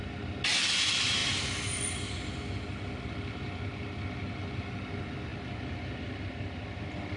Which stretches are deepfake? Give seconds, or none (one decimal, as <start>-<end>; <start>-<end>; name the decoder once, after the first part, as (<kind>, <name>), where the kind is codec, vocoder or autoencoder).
none